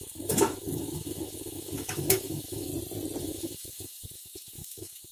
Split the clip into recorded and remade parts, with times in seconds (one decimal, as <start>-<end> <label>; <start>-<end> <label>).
0.0-2.7 remade; 2.7-3.2 recorded; 3.2-5.1 remade